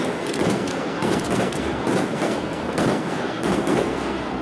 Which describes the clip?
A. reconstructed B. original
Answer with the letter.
A